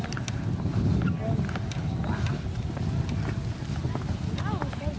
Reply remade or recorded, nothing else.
recorded